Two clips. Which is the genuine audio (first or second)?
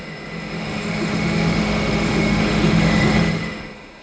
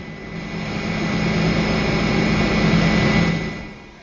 second